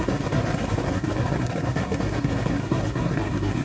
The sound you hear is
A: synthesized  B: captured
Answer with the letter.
A